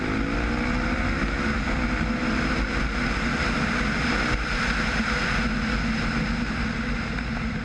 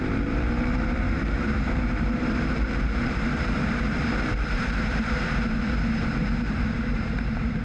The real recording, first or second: first